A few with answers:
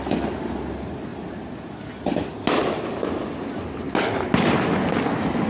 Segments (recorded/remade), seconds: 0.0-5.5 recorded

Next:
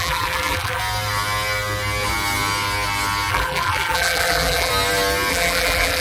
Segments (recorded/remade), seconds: 0.0-0.8 remade; 0.8-3.3 recorded; 3.3-4.7 remade; 4.7-5.3 recorded; 5.3-6.0 remade

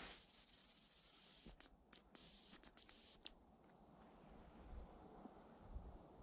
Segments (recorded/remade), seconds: 0.0-2.2 recorded; 2.2-3.3 remade; 3.3-6.2 recorded

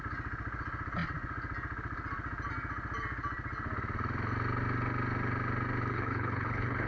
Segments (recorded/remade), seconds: 0.0-5.9 recorded; 5.9-6.9 remade

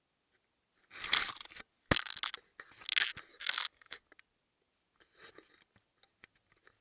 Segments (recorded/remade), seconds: 0.0-3.3 recorded; 3.3-4.0 remade; 4.0-6.8 recorded

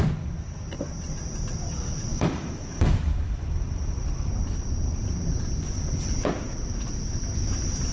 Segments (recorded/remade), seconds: 0.0-2.1 recorded; 2.1-4.3 remade; 4.3-7.9 recorded

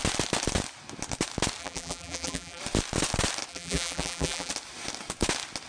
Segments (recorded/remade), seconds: 0.0-1.6 recorded; 1.6-2.6 remade; 2.6-3.5 recorded; 3.5-4.5 remade; 4.5-5.7 recorded

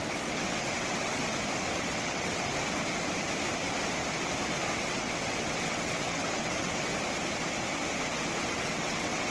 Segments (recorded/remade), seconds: 0.0-1.3 remade; 1.3-1.8 recorded; 1.8-2.5 remade; 2.5-4.7 recorded; 4.7-6.9 remade; 6.9-8.4 recorded; 8.4-9.3 remade